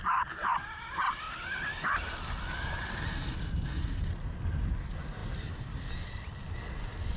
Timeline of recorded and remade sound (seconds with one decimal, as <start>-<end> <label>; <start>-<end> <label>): 0.0-7.2 recorded